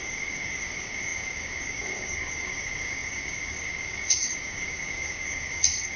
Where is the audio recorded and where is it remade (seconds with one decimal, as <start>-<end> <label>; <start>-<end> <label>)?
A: 0.0-6.0 remade